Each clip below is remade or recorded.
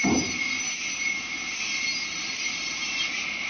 recorded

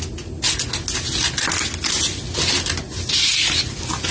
recorded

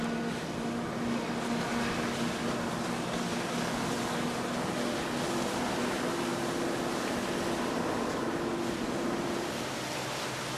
recorded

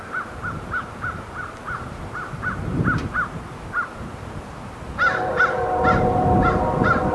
remade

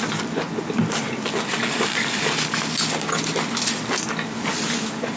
recorded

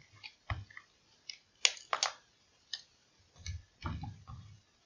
recorded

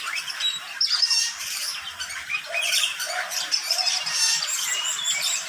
remade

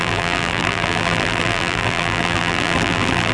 remade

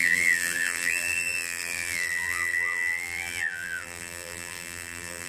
remade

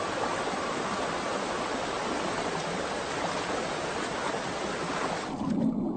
recorded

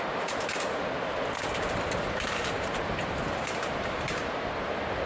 remade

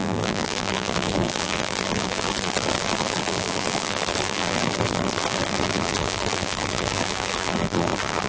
remade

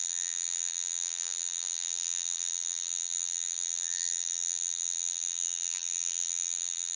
remade